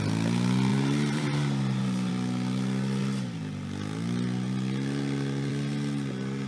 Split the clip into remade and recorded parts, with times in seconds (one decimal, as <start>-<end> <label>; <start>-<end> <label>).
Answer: 0.0-0.7 recorded; 0.7-2.1 remade; 2.1-6.5 recorded